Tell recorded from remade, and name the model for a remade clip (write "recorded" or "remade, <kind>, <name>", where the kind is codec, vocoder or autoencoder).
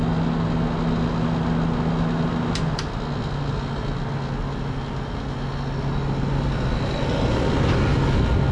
recorded